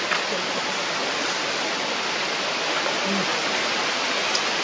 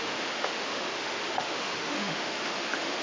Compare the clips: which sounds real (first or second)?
first